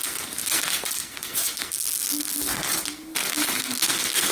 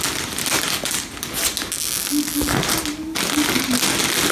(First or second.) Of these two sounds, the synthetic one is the first